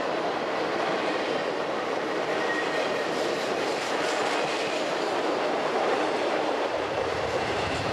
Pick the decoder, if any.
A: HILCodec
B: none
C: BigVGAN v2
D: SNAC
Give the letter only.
C